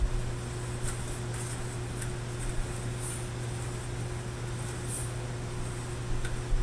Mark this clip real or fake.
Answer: real